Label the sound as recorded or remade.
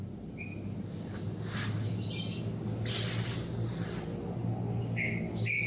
recorded